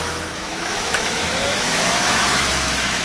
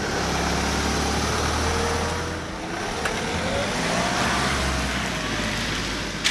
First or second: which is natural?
second